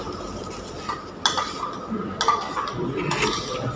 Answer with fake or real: real